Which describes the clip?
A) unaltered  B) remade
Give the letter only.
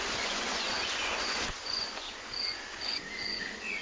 B